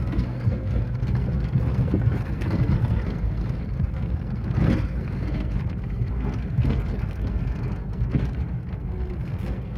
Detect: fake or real fake